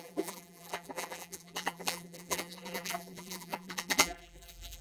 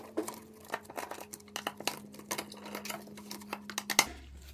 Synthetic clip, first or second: first